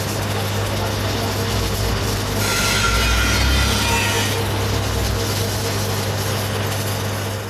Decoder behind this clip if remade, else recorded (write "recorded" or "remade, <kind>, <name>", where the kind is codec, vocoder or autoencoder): recorded